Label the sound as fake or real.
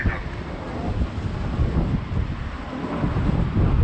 real